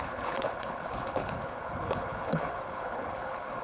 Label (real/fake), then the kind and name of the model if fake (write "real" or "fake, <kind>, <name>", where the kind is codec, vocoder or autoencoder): fake, codec, HILCodec